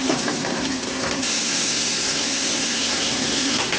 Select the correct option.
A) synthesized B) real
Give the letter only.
A